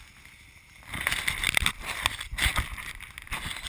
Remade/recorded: recorded